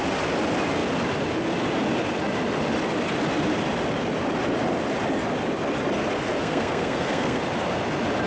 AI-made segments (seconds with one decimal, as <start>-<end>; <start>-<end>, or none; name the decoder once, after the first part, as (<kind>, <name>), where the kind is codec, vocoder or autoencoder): 6.4-7.4 (codec, SNAC)